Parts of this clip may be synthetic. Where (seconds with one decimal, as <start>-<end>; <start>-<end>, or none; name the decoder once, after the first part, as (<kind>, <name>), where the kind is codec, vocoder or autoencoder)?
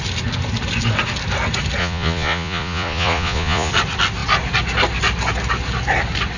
1.8-3.7 (vocoder, Vocos)